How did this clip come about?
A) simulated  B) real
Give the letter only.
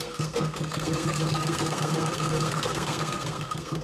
A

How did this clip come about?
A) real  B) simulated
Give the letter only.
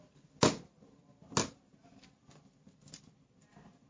A